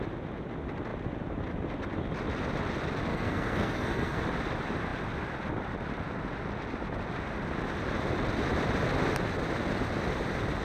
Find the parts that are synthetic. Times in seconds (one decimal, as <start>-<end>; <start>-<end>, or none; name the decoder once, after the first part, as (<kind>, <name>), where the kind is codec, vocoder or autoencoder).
3.1-4.2 (codec, SNAC)